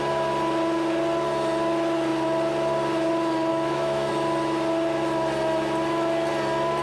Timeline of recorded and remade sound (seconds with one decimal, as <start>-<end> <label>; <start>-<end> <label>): 0.0-3.5 recorded; 3.5-4.1 remade; 4.1-6.8 recorded